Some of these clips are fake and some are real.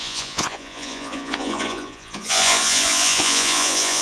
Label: fake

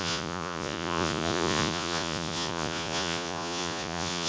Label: fake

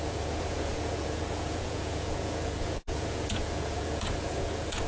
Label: fake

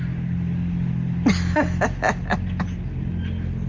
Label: real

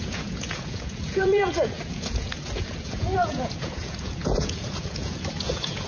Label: fake